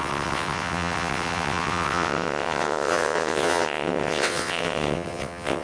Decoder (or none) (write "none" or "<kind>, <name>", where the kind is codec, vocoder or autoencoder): vocoder, WaveNeXt